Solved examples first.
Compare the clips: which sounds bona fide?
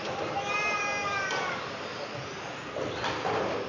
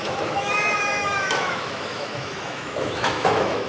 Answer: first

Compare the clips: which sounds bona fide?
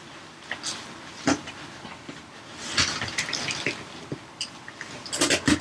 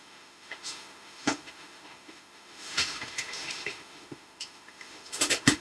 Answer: first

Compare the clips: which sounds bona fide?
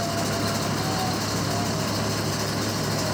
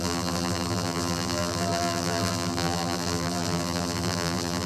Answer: first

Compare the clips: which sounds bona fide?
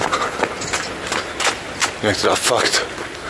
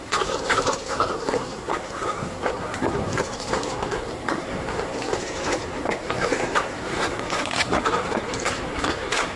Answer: first